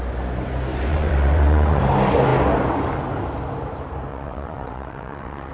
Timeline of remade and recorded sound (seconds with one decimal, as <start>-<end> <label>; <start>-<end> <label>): 0.0-0.9 recorded; 0.9-1.8 remade; 1.8-4.1 recorded; 4.1-5.5 remade

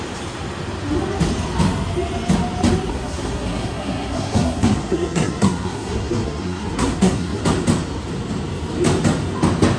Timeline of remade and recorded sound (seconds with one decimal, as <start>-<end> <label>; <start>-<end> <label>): 0.0-2.9 recorded; 2.9-7.4 remade; 7.4-9.8 recorded

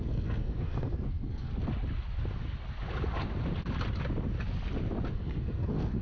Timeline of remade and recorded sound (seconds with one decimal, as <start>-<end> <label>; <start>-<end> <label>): 0.0-1.5 remade; 1.5-5.1 recorded; 5.1-6.0 remade

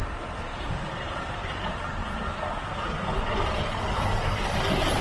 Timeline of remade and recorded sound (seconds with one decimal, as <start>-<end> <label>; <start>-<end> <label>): 0.0-2.2 remade; 2.2-4.2 recorded; 4.2-5.0 remade

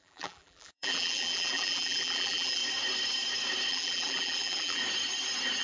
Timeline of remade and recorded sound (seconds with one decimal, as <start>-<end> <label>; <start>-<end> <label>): 0.0-2.6 remade; 2.6-3.7 recorded; 3.7-4.8 remade; 4.8-5.6 recorded

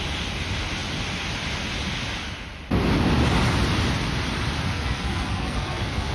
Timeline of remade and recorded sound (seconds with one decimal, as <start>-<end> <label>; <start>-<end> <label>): 0.0-4.7 recorded; 4.7-6.1 remade

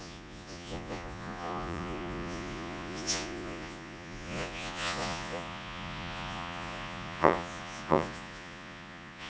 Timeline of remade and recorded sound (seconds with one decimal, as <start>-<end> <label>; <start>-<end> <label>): 0.0-9.3 remade